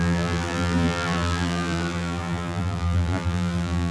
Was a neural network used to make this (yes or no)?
yes